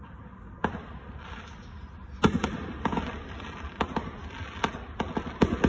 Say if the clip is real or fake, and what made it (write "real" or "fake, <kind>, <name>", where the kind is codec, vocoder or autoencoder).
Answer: real